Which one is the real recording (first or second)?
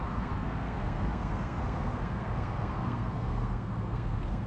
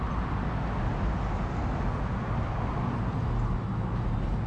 second